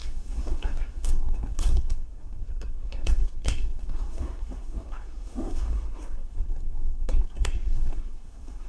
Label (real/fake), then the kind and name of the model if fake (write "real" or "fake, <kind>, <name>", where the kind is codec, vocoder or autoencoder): fake, codec, SNAC